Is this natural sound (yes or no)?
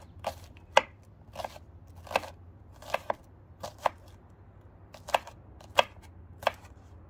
yes